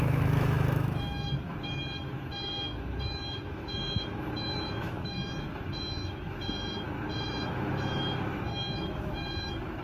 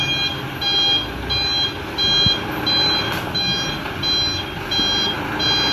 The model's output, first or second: first